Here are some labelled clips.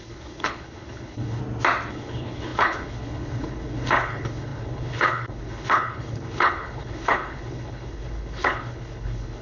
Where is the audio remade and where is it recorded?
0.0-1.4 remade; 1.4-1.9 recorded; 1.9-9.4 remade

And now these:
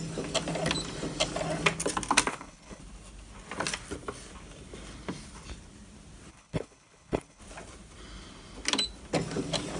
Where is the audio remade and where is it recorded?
0.0-2.3 recorded; 2.3-2.8 remade; 2.8-6.3 recorded; 6.3-7.4 remade; 7.4-9.8 recorded